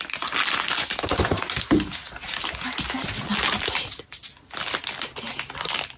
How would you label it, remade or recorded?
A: recorded